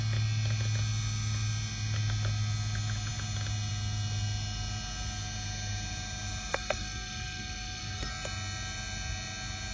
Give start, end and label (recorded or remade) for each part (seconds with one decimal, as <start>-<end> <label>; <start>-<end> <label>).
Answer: 0.0-6.5 recorded; 6.5-8.1 remade; 8.1-9.7 recorded